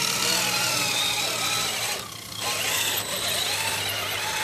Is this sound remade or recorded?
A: recorded